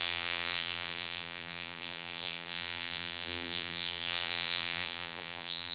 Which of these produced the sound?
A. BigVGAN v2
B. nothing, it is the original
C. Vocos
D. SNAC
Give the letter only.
A